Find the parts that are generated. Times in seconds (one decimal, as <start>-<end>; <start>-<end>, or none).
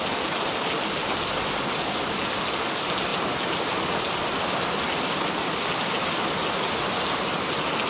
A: none